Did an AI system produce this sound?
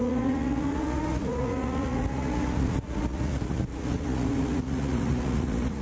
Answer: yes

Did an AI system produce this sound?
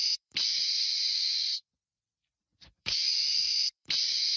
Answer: yes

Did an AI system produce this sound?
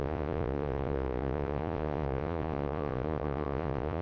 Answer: yes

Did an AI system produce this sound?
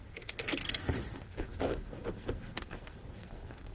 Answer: yes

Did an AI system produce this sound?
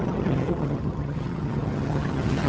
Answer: yes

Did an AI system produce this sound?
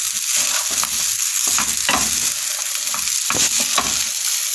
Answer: no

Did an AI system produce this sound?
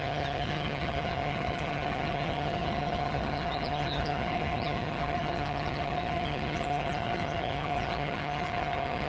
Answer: yes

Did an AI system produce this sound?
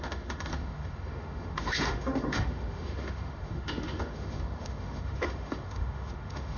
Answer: yes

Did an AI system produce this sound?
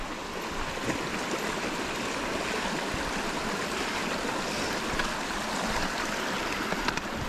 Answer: no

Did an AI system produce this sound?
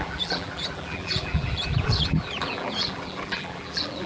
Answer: yes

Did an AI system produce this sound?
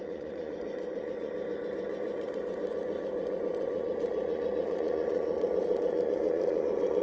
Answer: yes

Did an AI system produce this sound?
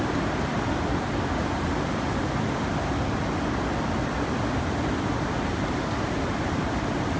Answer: no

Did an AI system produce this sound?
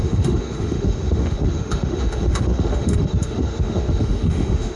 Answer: yes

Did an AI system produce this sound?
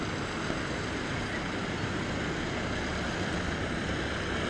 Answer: no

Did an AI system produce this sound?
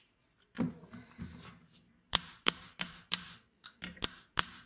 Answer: yes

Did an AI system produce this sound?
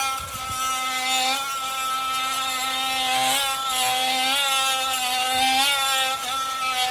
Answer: no